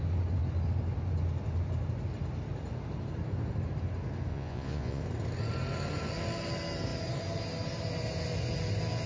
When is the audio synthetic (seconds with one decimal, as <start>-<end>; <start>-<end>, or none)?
4.3-5.0